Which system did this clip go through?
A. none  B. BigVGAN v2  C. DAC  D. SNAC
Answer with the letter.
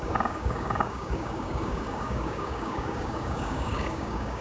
C